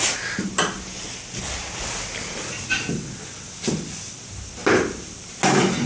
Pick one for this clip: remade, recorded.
recorded